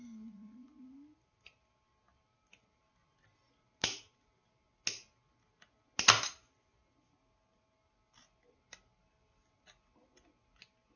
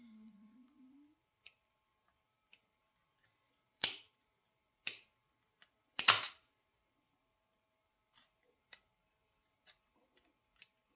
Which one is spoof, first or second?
second